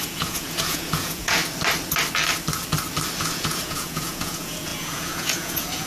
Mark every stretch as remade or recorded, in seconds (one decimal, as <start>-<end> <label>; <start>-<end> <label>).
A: 0.0-1.4 remade; 1.4-3.2 recorded; 3.2-5.9 remade